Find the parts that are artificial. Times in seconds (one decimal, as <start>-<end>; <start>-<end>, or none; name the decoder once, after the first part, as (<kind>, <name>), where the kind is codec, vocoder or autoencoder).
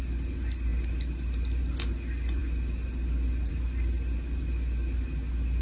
none